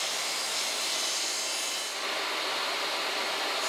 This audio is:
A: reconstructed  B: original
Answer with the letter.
A